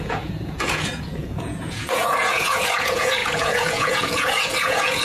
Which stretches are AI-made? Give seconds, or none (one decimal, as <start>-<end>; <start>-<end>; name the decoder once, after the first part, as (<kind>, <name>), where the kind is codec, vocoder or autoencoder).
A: 0.0-5.0 (vocoder, Vocos)